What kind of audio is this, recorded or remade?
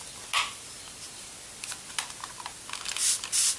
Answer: recorded